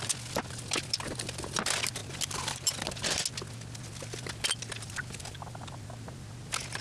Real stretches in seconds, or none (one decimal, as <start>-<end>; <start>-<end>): 0.0-6.8